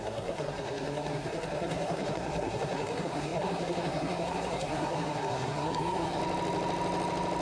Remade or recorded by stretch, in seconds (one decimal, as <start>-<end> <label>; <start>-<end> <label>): 0.0-6.2 remade; 6.2-7.4 recorded